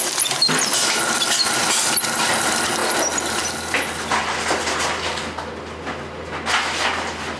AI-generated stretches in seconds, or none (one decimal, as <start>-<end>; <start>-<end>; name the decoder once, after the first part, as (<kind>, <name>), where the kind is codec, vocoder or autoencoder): none